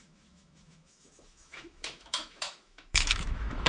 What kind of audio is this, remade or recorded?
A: remade